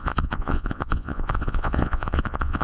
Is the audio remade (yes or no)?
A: yes